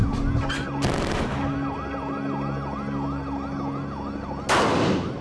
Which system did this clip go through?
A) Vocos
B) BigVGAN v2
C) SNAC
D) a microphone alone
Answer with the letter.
D